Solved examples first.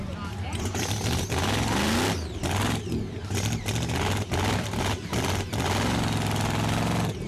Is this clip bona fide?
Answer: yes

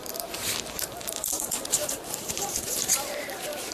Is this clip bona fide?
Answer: no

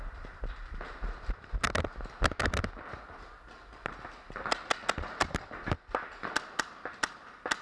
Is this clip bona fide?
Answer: yes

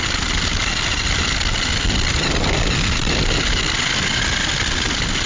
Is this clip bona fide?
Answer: yes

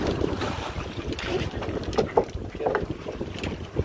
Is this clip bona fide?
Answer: yes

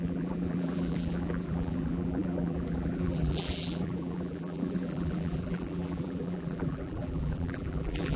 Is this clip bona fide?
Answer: no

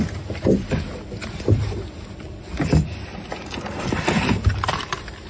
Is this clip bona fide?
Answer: yes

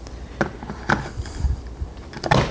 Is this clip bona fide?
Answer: yes